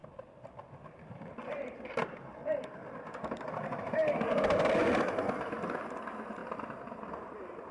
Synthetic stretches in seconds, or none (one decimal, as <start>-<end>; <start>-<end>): 0.0-1.9; 2.4-4.6; 6.4-7.0